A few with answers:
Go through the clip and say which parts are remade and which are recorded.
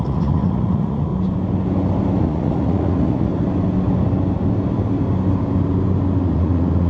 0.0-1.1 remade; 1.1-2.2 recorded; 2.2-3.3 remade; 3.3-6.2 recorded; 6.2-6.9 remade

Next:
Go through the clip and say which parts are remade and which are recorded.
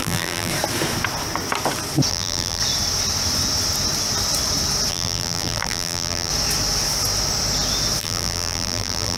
0.0-0.5 remade; 0.5-2.1 recorded; 2.1-2.6 remade; 2.6-4.9 recorded; 4.9-6.3 remade; 6.3-8.0 recorded; 8.0-9.2 remade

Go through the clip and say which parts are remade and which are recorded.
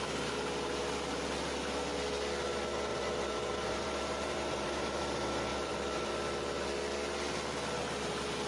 0.0-2.9 recorded; 2.9-5.0 remade; 5.0-5.5 recorded; 5.5-6.1 remade; 6.1-8.5 recorded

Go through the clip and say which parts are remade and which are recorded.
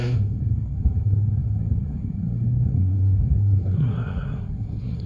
0.0-5.1 remade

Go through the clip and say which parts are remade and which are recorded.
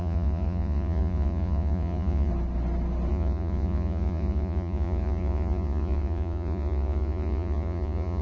0.0-2.3 remade; 2.3-3.1 recorded; 3.1-8.2 remade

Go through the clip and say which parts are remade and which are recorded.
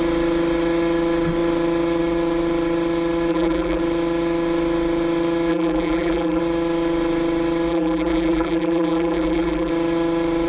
0.0-3.3 recorded; 3.3-3.8 remade; 3.8-5.5 recorded; 5.5-6.4 remade; 6.4-7.7 recorded; 7.7-9.7 remade; 9.7-10.5 recorded